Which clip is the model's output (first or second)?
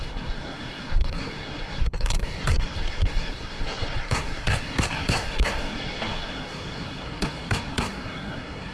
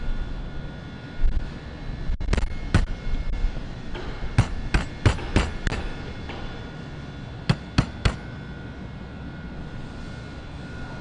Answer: first